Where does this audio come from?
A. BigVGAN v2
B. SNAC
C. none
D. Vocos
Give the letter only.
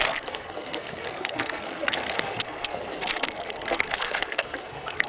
B